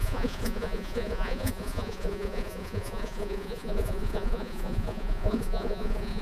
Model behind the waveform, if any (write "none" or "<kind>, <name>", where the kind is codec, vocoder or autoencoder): vocoder, Vocos